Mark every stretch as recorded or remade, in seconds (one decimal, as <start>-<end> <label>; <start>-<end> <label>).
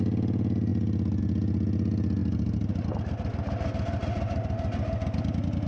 0.0-5.7 recorded